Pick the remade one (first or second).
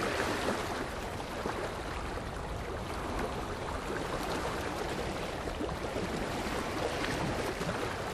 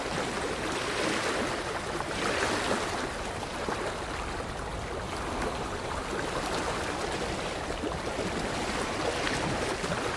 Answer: first